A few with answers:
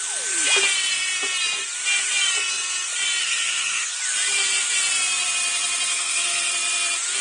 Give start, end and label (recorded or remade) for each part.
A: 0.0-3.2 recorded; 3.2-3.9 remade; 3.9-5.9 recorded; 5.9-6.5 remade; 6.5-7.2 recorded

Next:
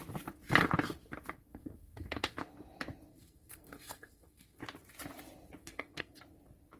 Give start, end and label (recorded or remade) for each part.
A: 0.0-1.5 recorded; 1.5-2.4 remade; 2.4-3.1 recorded; 3.1-4.6 remade; 4.6-5.6 recorded; 5.6-6.2 remade; 6.2-6.8 recorded

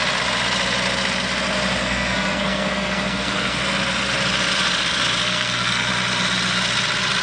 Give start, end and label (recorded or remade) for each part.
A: 0.0-1.8 recorded; 1.8-3.6 remade; 3.6-5.2 recorded; 5.2-5.9 remade; 5.9-7.2 recorded